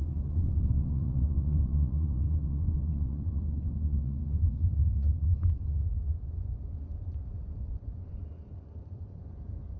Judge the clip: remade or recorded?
remade